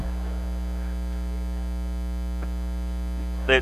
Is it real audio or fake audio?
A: real